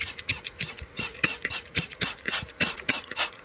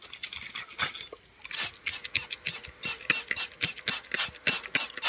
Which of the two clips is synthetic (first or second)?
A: first